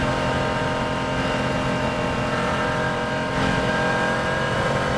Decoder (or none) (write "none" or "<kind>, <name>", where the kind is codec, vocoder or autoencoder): none